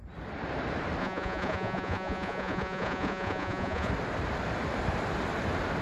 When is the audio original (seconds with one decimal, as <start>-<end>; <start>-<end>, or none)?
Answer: 0.0-1.0; 3.9-5.8